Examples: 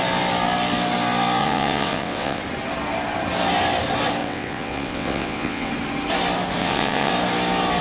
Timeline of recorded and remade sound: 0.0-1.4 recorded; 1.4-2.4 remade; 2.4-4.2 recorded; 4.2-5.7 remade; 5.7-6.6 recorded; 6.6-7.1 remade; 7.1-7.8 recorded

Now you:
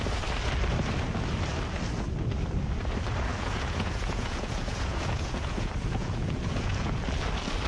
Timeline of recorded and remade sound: 0.0-3.3 recorded; 3.3-7.0 remade; 7.0-7.7 recorded

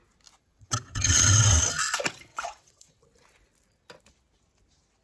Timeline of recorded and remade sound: 0.0-0.4 recorded; 0.4-1.6 remade; 1.6-2.3 recorded; 2.3-3.0 remade; 3.0-5.0 recorded

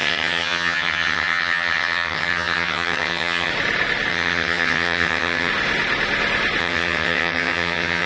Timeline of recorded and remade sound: 0.0-3.5 remade; 3.5-4.1 recorded; 4.1-5.5 remade; 5.5-6.6 recorded; 6.6-8.1 remade

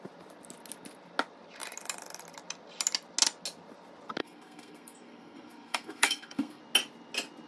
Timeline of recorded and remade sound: 0.0-4.2 recorded; 4.2-6.6 remade; 6.6-7.5 recorded

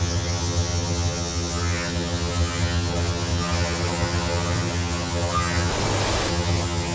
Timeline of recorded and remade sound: 0.0-5.7 remade; 5.7-6.3 recorded; 6.3-6.9 remade